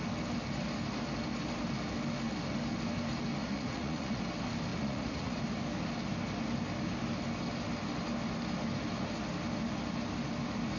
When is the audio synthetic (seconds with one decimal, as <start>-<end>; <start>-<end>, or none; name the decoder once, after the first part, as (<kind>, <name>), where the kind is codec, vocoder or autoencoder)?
3.4-4.2 (vocoder, Vocos); 4.7-5.4